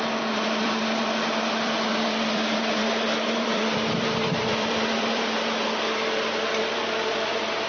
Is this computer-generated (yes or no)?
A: yes